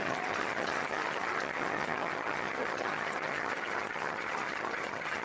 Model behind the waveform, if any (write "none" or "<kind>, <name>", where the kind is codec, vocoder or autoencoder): vocoder, HiFi-GAN